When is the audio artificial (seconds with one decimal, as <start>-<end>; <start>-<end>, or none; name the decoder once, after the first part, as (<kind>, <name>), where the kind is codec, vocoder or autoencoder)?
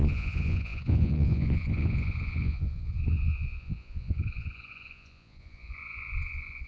0.0-6.7 (vocoder, Vocos)